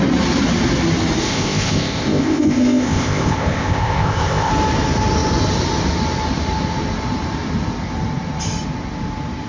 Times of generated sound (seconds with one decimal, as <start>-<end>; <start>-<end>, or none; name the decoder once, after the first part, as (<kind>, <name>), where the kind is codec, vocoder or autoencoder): 1.2-4.5 (codec, ZipCodec)

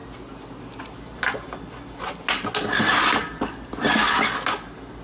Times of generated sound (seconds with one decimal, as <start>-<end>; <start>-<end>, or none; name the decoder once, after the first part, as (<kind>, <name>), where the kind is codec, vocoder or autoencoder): none